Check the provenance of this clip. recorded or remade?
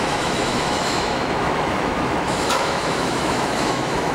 remade